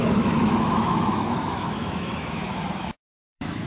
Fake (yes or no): yes